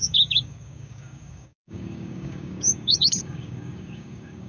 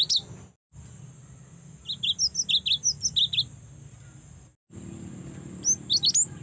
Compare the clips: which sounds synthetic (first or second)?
first